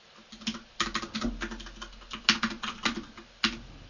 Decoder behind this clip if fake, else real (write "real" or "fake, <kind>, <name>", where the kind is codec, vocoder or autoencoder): real